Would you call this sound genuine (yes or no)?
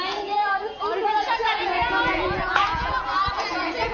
no